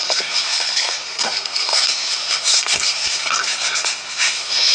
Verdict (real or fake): fake